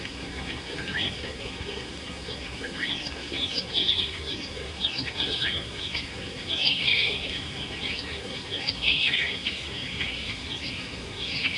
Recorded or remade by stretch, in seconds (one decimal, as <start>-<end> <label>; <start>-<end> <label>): 0.0-11.6 remade